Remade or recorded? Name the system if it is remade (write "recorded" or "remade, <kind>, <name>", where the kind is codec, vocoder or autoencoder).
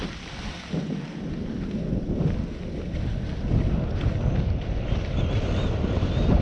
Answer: recorded